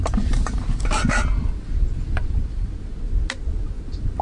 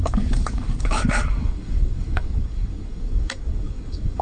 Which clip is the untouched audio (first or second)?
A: first